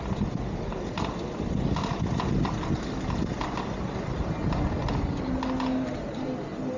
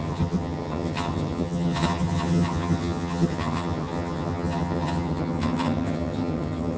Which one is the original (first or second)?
first